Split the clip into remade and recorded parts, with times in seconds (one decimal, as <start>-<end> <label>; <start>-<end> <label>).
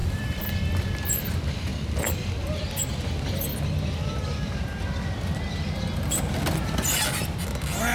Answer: 0.0-0.5 remade; 0.5-7.9 recorded